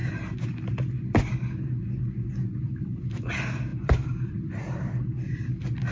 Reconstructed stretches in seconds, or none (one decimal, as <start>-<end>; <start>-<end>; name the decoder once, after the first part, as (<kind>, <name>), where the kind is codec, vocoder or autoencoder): none